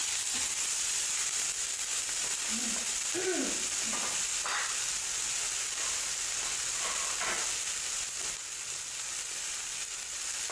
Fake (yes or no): no